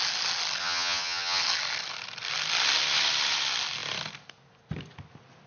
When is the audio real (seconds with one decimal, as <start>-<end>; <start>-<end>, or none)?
0.0-0.6; 1.4-5.5